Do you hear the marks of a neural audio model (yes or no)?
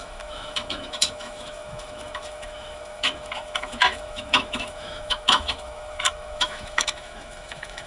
yes